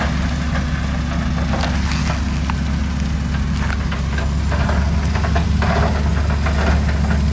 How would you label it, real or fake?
real